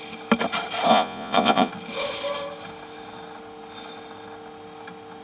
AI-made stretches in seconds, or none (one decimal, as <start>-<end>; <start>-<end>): 0.9-1.7